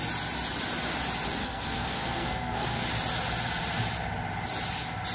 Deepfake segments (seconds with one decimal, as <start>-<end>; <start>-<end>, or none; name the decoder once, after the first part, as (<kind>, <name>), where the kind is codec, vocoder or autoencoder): 1.4-2.8 (codec, SNAC)